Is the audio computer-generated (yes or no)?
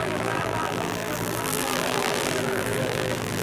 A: yes